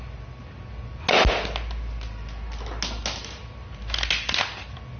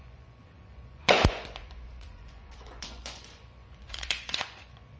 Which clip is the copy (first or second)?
second